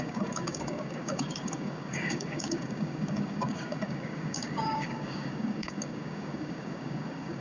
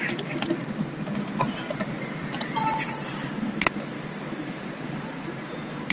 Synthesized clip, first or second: first